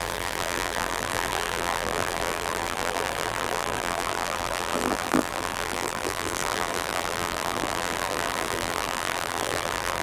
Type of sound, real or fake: fake